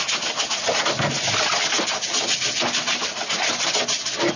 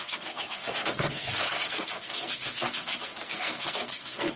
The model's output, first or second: second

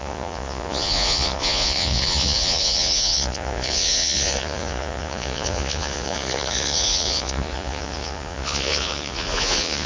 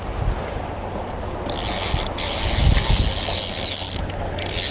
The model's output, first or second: first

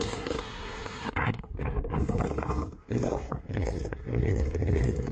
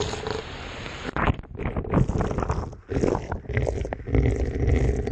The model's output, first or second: first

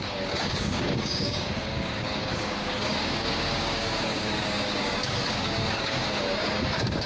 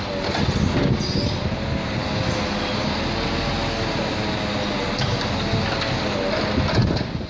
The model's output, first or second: first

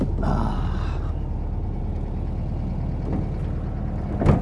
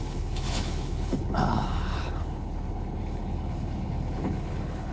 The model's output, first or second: second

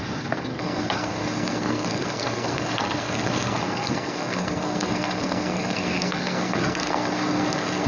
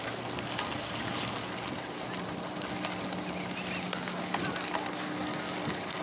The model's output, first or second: first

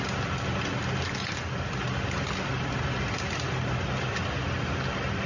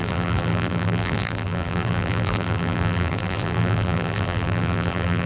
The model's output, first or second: second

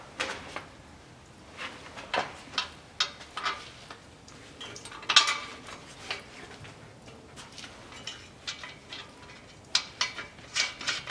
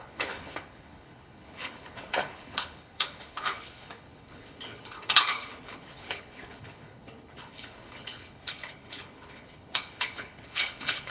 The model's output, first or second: second